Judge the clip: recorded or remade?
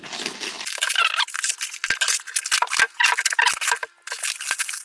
recorded